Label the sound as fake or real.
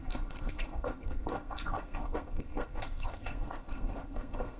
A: fake